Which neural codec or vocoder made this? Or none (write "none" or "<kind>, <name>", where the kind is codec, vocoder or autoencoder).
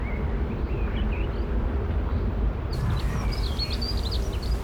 vocoder, BigVGAN v2